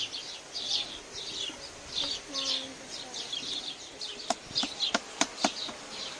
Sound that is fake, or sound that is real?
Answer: real